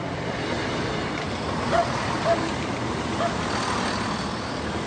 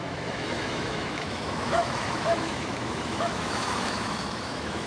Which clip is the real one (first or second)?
first